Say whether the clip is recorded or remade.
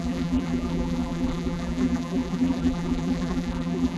remade